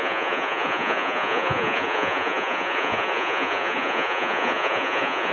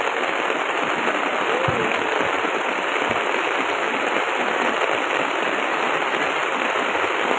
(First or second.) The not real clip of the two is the first